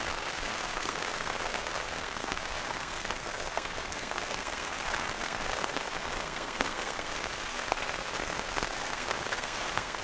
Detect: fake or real fake